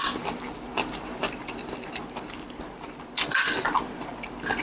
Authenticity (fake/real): real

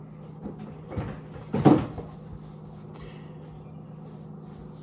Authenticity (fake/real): real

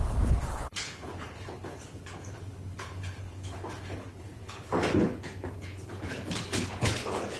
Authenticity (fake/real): fake